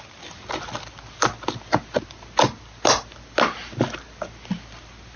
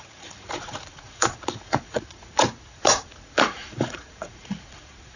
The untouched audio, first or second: first